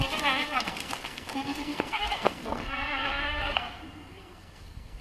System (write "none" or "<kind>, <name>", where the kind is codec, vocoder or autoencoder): codec, SNAC